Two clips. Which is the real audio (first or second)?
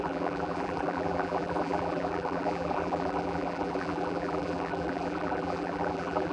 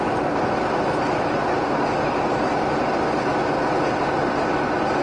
second